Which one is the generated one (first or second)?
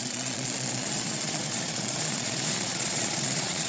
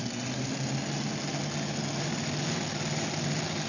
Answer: first